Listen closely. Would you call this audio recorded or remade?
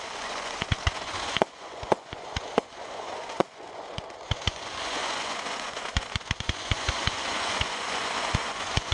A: remade